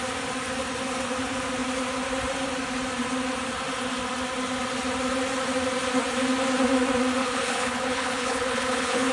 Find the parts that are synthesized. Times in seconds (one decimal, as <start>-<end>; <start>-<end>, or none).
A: 7.2-9.1